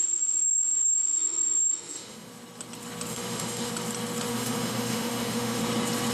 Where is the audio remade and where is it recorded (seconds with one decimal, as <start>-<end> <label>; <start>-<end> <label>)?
0.0-2.3 remade; 2.3-3.1 recorded; 3.1-3.7 remade; 3.7-4.3 recorded; 4.3-5.6 remade; 5.6-6.1 recorded